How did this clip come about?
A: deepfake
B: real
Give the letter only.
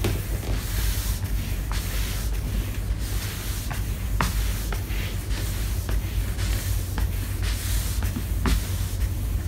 B